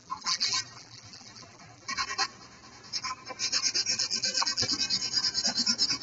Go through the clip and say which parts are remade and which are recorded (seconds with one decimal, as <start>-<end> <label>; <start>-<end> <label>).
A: 0.0-1.9 remade; 1.9-3.9 recorded; 3.9-4.7 remade; 4.7-6.0 recorded